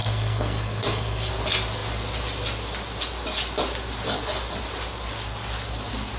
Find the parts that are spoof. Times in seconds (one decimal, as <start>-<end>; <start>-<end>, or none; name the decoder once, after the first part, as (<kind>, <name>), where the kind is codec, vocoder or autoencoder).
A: 0.0-1.3 (codec, SNAC)

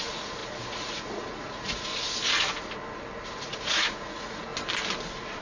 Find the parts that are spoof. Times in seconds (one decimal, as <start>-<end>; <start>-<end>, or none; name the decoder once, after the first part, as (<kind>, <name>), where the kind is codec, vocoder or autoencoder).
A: 0.0-1.9 (vocoder, Vocos); 3.3-4.5